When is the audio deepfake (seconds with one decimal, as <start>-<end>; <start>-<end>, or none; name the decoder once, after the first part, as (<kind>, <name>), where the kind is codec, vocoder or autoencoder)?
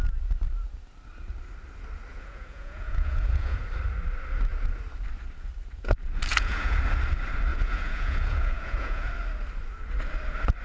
2.1-3.6 (vocoder, Vocos); 6.3-6.8; 7.5-9.1